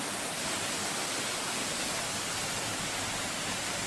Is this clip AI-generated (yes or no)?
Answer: no